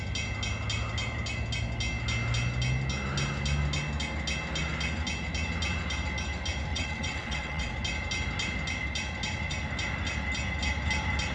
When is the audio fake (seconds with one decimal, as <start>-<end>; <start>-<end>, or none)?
6.7-7.7